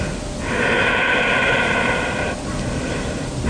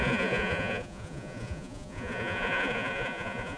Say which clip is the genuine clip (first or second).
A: first